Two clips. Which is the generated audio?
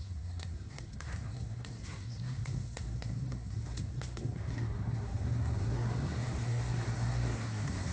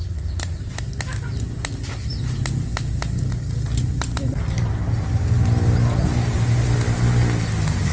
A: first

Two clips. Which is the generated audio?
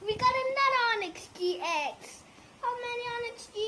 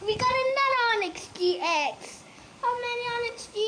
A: second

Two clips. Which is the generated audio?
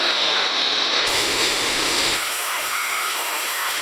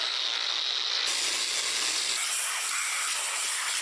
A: first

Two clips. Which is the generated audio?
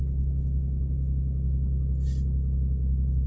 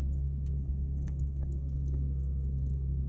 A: second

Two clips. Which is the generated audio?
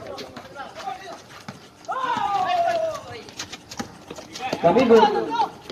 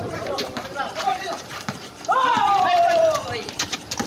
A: second